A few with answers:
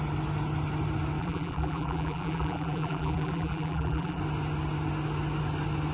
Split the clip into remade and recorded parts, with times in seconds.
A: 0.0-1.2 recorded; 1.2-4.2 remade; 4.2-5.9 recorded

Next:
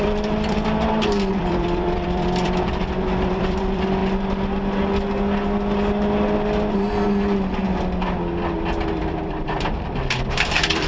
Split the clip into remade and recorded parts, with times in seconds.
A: 0.0-4.0 remade; 4.0-9.0 recorded; 9.0-10.9 remade

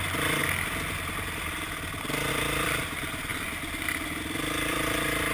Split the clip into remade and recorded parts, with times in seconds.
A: 0.0-0.4 remade; 0.4-2.3 recorded; 2.3-3.3 remade; 3.3-4.2 recorded; 4.2-5.3 remade